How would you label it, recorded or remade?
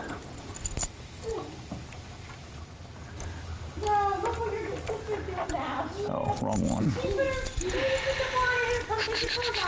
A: recorded